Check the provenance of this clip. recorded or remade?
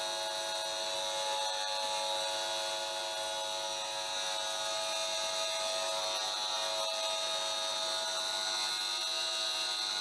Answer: recorded